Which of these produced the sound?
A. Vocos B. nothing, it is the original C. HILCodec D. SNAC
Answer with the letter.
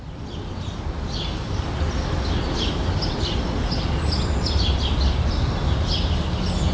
B